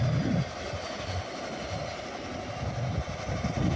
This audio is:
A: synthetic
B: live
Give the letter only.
B